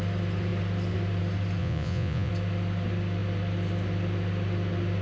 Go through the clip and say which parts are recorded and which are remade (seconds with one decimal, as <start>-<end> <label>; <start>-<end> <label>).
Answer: 0.0-1.6 recorded; 1.6-2.3 remade; 2.3-5.0 recorded